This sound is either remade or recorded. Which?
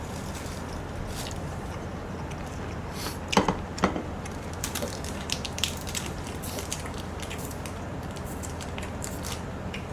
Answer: remade